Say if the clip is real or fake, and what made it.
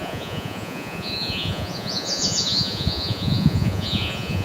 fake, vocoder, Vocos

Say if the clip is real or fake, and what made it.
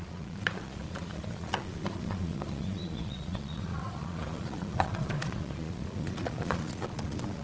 fake, vocoder, Vocos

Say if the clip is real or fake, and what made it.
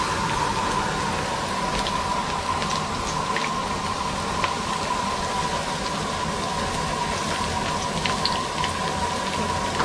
real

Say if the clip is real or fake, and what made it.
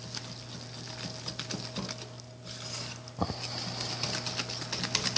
real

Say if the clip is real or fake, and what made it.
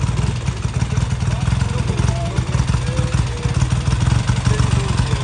real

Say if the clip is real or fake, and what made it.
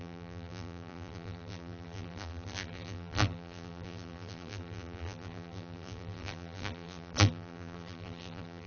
fake, vocoder, BigVGAN v2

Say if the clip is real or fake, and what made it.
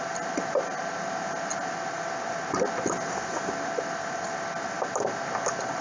real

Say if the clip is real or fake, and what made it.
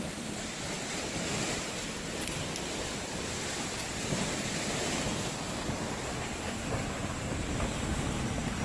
fake, vocoder, BigVGAN v2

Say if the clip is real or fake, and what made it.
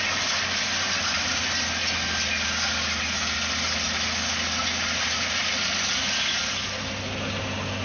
real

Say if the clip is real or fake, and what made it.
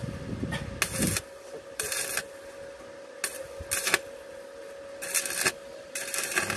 real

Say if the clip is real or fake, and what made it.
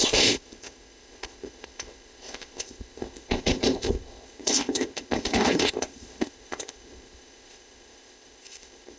fake, codec, ZipCodec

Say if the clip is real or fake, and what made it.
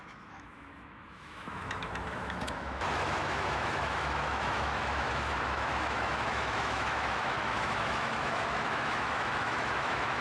fake, autoencoder, DAC-VAE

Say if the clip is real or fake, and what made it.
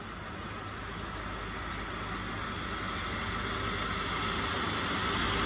real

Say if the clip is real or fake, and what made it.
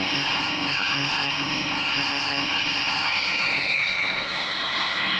fake, codec, SNAC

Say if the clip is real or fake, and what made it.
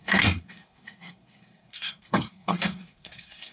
fake, codec, SNAC